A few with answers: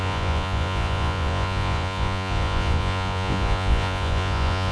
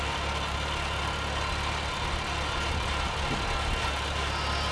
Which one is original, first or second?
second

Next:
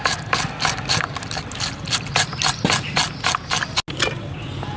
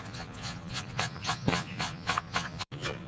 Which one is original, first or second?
first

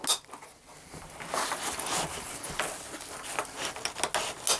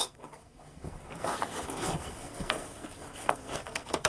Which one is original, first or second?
first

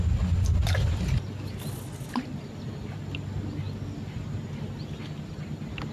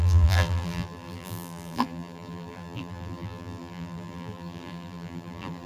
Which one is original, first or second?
first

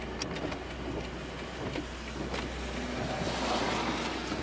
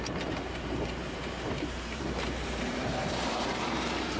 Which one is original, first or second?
first